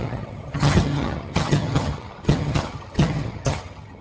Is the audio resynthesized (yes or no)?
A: yes